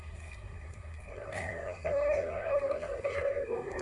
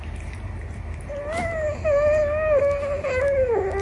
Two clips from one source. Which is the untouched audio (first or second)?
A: second